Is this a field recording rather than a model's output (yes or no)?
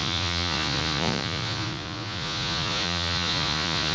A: no